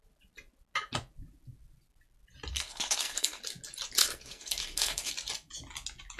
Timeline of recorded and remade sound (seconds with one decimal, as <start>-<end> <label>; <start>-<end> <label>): 0.0-2.5 recorded; 2.5-3.4 remade; 3.4-4.0 recorded; 4.0-5.1 remade; 5.1-6.2 recorded